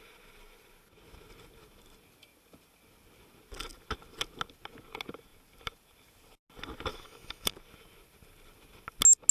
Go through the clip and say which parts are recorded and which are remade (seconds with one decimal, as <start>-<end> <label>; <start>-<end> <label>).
0.0-6.9 recorded; 6.9-7.5 remade; 7.5-9.3 recorded